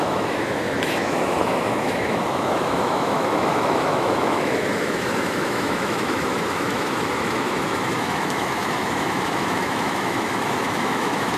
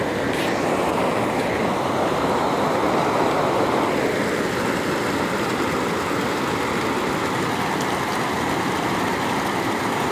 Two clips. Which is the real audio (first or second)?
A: second